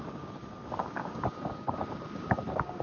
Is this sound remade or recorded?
remade